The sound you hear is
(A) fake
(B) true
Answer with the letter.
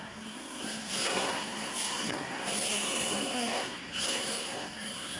A